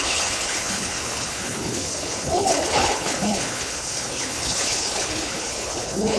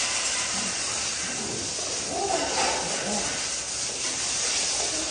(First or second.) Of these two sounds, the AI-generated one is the first